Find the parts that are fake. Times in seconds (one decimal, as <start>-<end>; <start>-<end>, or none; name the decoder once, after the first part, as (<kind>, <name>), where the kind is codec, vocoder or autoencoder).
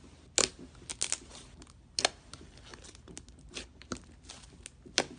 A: none